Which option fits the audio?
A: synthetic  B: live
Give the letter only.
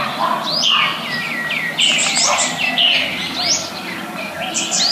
B